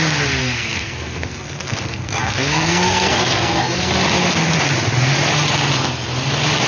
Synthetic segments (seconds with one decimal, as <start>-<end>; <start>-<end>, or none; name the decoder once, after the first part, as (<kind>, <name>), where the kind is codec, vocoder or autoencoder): 0.4-3.9 (codec, SNAC)